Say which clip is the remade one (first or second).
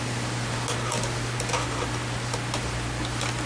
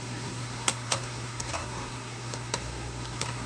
second